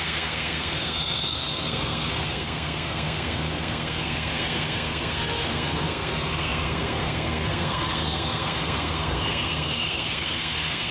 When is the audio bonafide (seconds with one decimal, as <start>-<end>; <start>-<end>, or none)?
none